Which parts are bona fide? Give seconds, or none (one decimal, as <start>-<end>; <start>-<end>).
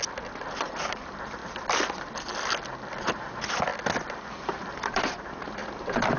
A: 0.0-0.7; 1.4-3.0; 3.7-4.3